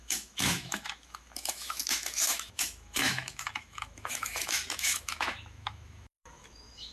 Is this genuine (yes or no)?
no